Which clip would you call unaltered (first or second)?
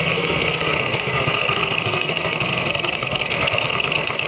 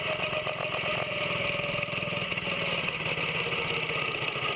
second